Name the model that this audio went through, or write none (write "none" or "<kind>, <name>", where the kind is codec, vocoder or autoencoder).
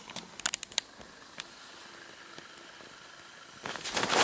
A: none